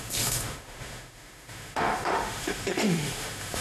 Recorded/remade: remade